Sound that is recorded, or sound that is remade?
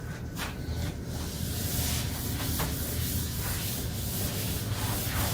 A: recorded